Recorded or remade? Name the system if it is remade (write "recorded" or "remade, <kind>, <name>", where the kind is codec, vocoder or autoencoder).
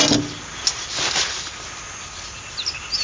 recorded